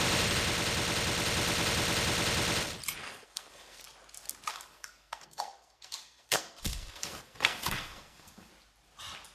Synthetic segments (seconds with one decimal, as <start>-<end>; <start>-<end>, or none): 3.0-3.8; 4.5-8.5